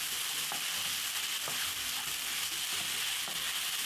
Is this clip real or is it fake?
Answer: real